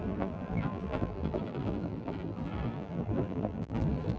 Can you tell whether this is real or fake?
fake